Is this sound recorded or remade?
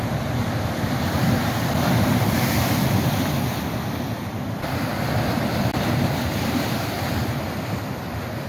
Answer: remade